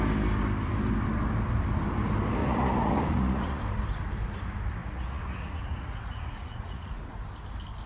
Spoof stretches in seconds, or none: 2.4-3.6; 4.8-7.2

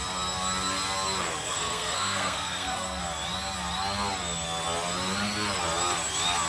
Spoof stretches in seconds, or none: 1.4-3.0

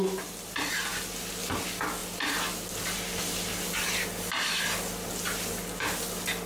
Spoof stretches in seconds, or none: none

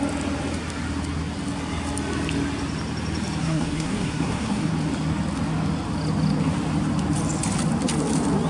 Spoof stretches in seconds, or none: 3.4-4.7